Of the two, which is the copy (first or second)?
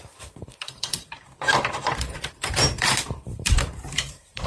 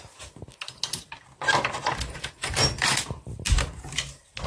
first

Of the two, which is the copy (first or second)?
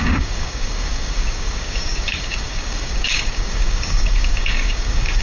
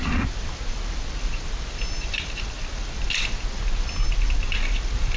first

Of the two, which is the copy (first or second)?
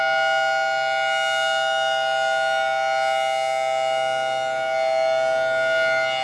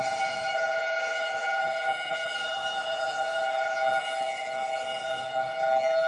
second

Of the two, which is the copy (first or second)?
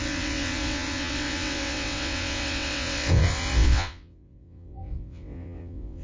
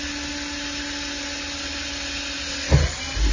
first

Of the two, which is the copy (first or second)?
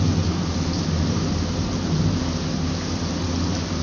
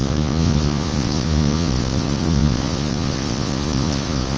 second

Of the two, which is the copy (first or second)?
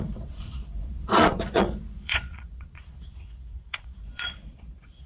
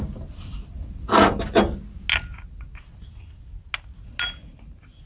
first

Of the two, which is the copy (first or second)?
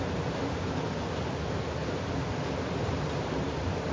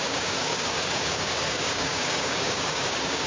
second